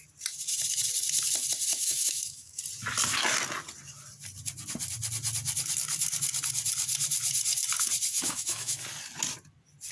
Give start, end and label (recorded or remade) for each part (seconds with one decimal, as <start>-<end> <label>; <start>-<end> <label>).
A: 0.0-1.7 recorded; 1.7-2.6 remade; 2.6-8.1 recorded; 8.1-8.8 remade; 8.8-9.9 recorded